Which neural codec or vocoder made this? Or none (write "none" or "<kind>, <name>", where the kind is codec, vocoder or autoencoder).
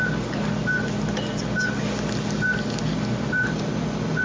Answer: none